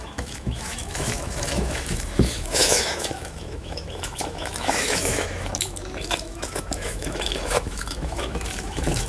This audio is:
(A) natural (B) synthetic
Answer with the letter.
B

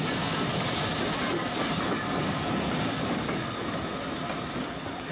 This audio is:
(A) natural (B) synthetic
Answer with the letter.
A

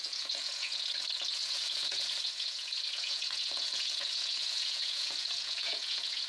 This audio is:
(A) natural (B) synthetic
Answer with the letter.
B